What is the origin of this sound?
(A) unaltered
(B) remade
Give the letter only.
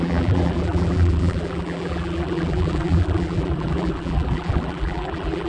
B